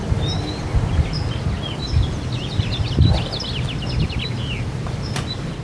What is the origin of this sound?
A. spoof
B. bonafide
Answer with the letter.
A